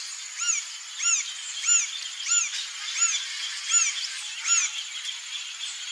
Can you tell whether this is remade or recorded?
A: recorded